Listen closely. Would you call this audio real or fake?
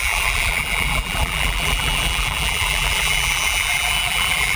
fake